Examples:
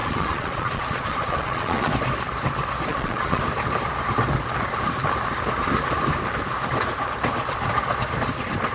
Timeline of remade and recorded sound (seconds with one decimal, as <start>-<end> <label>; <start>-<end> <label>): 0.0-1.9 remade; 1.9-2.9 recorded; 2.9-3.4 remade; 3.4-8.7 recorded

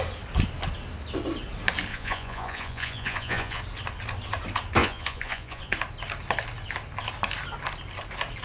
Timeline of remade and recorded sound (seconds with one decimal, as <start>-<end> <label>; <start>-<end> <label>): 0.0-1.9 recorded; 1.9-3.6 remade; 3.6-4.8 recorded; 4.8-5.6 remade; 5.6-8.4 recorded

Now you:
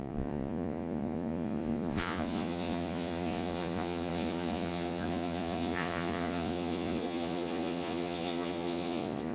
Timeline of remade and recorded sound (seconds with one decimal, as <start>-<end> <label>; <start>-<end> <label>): 0.0-9.3 remade

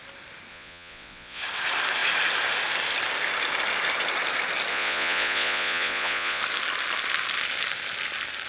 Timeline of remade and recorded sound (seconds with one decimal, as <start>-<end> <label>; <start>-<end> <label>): 0.0-0.5 recorded; 0.5-1.4 remade; 1.4-4.7 recorded; 4.7-6.4 remade; 6.4-8.5 recorded

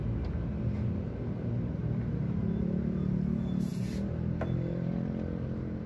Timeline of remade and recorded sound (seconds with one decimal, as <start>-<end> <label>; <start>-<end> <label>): 0.0-5.9 recorded

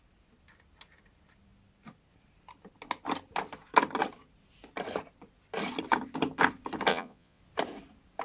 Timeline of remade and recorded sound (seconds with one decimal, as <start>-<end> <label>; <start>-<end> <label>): 0.0-6.9 recorded; 6.9-7.4 remade; 7.4-8.2 recorded

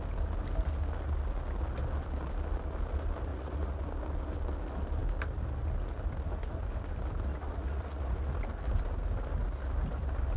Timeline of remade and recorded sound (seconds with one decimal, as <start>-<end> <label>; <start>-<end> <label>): 0.0-3.3 recorded; 3.3-3.8 remade; 3.8-7.3 recorded; 7.3-8.3 remade; 8.3-10.4 recorded

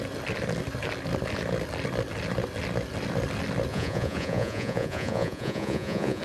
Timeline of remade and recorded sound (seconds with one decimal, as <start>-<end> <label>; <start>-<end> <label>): 0.0-3.7 recorded; 3.7-6.2 remade